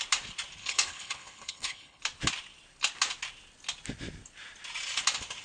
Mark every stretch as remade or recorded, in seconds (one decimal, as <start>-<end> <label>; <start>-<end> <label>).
0.0-0.6 recorded; 0.6-2.0 remade; 2.0-5.4 recorded